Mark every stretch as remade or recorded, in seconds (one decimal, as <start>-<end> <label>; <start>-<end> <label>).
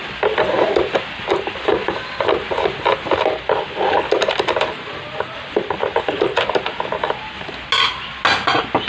0.0-8.9 recorded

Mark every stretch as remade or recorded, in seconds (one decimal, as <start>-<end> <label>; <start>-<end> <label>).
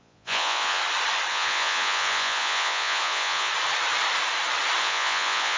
0.0-0.8 remade; 0.8-1.3 recorded; 1.3-3.5 remade; 3.5-4.8 recorded; 4.8-5.6 remade